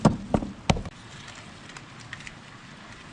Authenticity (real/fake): real